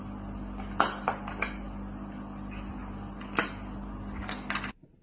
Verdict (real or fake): real